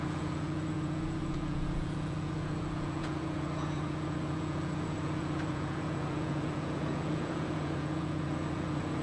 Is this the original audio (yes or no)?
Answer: no